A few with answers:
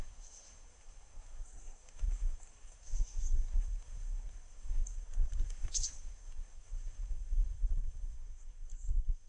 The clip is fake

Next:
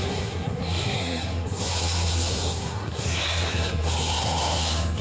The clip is fake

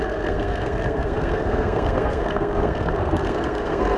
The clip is fake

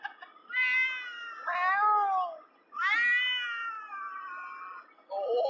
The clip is real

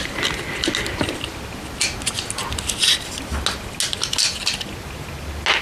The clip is real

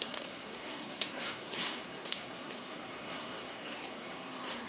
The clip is fake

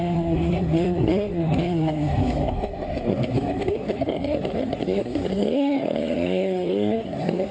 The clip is fake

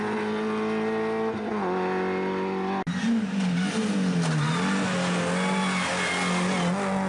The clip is real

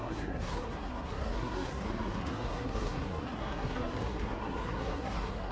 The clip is fake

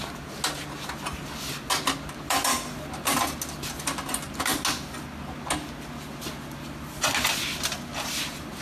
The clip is real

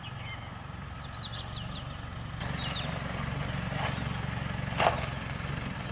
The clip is real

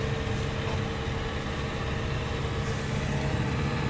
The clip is real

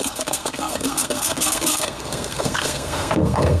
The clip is fake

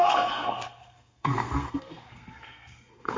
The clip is fake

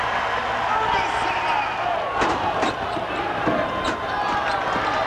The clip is real